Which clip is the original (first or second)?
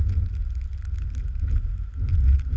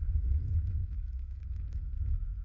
first